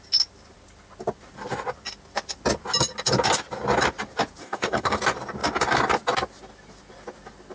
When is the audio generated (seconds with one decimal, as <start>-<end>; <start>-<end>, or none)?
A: 4.4-5.0